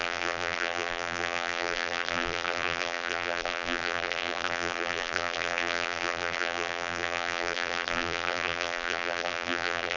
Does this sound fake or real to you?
fake